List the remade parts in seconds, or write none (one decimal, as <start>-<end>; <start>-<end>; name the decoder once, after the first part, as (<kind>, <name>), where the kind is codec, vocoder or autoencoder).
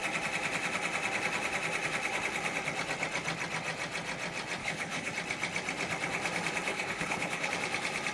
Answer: 4.6-5.1 (codec, HILCodec); 6.7-7.5